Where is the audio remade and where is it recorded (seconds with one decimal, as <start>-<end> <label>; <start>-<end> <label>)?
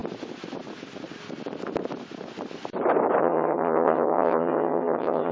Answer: 0.0-3.2 recorded; 3.2-5.3 remade